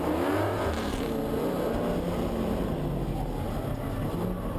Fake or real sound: real